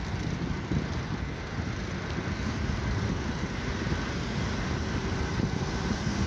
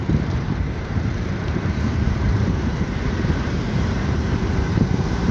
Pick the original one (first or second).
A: first